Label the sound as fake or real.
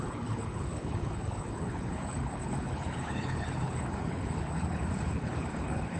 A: fake